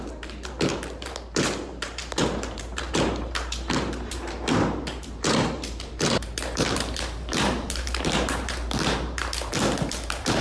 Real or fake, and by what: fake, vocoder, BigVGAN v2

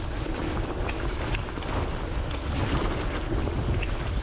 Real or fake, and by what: real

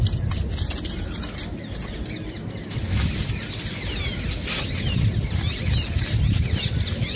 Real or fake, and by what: real